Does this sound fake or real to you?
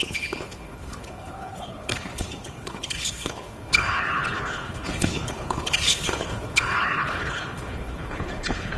fake